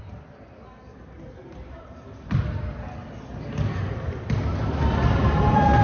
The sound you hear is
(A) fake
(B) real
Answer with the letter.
B